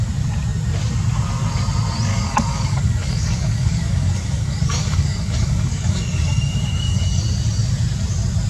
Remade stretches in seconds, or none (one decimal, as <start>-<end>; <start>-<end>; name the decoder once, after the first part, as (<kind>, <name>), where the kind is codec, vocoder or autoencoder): 2.1-7.2 (codec, DAC)